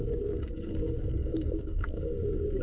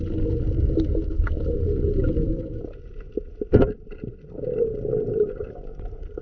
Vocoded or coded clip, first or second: first